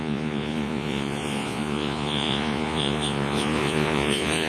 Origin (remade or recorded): remade